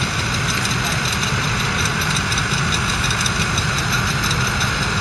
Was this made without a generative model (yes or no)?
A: yes